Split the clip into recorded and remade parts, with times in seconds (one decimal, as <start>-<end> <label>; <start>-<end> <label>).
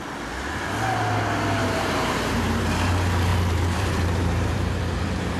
0.0-1.6 recorded; 1.6-2.9 remade; 2.9-3.3 recorded; 3.3-4.8 remade; 4.8-5.4 recorded